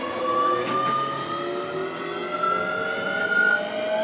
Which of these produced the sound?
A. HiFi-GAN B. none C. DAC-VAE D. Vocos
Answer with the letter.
B